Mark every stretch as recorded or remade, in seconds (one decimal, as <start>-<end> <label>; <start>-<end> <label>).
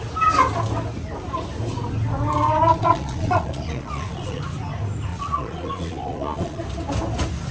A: 0.0-2.7 recorded; 2.7-4.4 remade; 4.4-5.1 recorded; 5.1-6.6 remade; 6.6-7.5 recorded